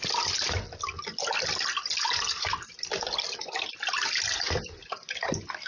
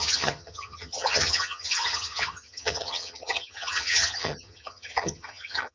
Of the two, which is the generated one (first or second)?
second